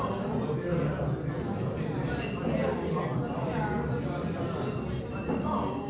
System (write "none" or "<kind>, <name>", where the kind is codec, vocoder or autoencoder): none